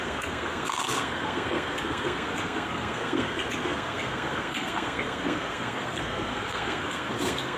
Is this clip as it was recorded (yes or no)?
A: no